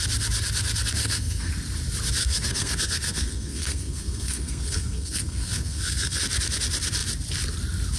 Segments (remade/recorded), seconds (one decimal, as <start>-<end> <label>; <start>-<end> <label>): 0.0-1.0 recorded; 1.0-1.5 remade; 1.5-2.2 recorded; 2.2-6.2 remade; 6.2-8.0 recorded